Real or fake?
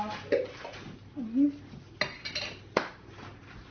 real